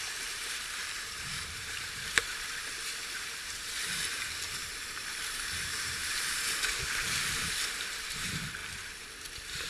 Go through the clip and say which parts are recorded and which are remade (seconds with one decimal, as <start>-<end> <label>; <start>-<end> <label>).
0.0-9.7 remade